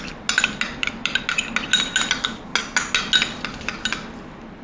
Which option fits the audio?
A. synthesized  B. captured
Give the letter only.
B